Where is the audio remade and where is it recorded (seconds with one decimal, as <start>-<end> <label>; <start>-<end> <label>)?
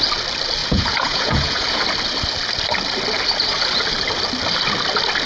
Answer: 0.0-0.6 recorded; 0.6-1.8 remade; 1.8-5.3 recorded